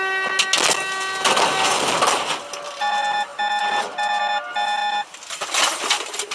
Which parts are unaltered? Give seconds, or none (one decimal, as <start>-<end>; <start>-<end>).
0.0-6.3